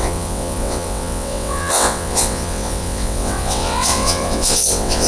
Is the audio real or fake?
fake